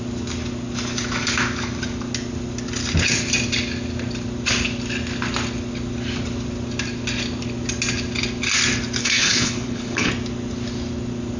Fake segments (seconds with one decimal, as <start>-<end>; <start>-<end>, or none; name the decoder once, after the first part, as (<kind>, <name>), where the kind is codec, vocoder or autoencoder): 9.0-10.1 (codec, HILCodec)